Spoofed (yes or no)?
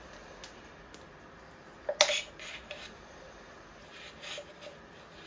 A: no